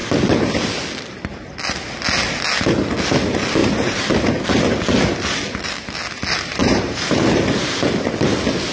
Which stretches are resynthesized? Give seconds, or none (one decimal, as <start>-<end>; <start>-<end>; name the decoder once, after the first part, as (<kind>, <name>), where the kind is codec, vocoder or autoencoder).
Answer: 3.6-4.1 (vocoder, BigVGAN v2); 6.6-7.5